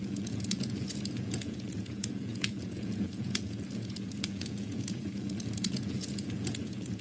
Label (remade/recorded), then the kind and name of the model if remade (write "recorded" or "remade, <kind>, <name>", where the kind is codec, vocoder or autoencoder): remade, vocoder, Vocos